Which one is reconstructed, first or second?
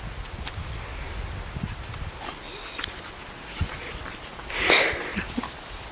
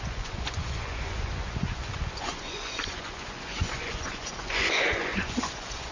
second